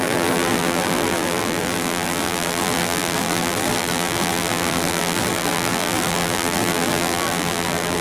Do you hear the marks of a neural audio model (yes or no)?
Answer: yes